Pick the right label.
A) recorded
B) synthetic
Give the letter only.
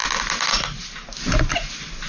A